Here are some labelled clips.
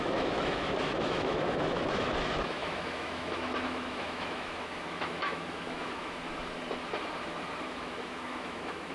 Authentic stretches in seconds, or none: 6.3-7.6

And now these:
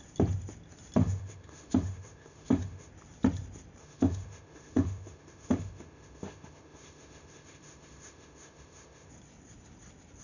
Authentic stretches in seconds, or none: 0.0-1.0; 2.9-3.8; 9.1-10.2

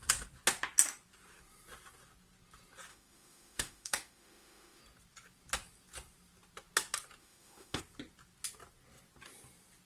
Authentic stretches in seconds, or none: 0.0-2.9; 4.8-7.2; 7.8-9.9

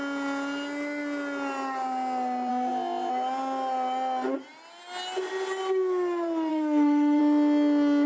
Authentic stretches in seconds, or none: 0.0-2.5; 3.1-6.5; 7.2-8.1

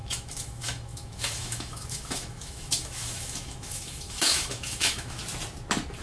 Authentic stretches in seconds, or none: 5.2-6.0

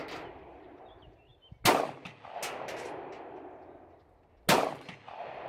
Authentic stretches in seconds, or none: 0.0-5.5